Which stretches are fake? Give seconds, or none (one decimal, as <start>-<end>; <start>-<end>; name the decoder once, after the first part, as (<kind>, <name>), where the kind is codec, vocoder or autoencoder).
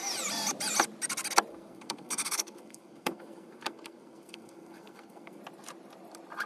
1.5-5.4 (codec, SNAC)